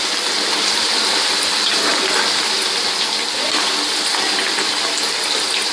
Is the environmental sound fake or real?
real